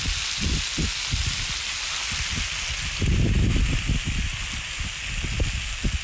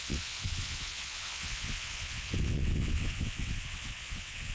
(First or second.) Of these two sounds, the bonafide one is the first